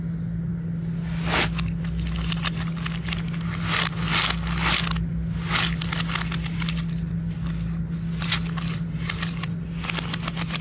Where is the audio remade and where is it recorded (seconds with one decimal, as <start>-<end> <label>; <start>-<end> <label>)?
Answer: 0.0-10.6 recorded